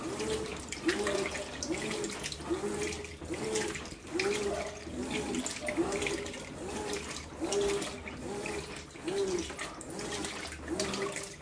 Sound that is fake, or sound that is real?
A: real